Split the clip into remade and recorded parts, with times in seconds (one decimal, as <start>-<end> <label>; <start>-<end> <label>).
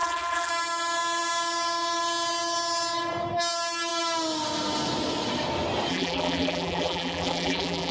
0.0-0.5 remade; 0.5-5.9 recorded; 5.9-7.9 remade